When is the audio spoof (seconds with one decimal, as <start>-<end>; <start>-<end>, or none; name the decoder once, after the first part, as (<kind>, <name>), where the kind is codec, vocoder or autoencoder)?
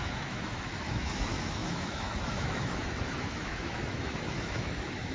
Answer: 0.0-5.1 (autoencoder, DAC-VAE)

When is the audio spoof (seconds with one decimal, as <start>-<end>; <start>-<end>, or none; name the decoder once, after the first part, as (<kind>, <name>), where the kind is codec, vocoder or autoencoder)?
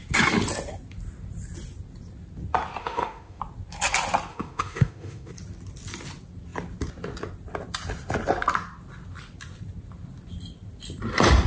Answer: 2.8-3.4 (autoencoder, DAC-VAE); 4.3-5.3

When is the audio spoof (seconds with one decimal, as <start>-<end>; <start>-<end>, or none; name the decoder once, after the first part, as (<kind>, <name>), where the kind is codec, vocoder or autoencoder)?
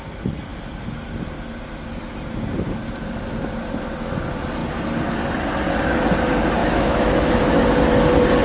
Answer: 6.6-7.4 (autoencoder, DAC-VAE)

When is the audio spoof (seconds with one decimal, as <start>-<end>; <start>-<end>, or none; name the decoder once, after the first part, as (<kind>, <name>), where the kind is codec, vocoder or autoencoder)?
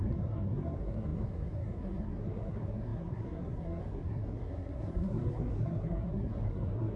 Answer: 0.0-7.0 (codec, SNAC)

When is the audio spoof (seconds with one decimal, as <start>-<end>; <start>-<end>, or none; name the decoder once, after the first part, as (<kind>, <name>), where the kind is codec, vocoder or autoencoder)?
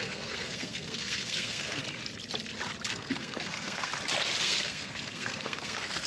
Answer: 0.0-1.8 (codec, SNAC); 2.9-3.9; 4.4-6.1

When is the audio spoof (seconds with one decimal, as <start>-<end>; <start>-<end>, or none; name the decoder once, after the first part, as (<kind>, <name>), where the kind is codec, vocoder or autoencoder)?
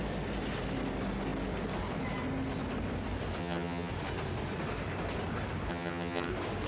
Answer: 3.4-3.9 (vocoder, HiFi-GAN); 5.7-6.3